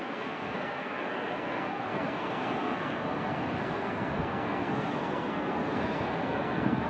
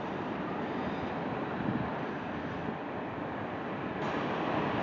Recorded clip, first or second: second